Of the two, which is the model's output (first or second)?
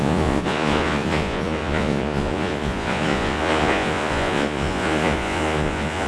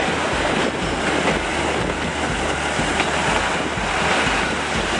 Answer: first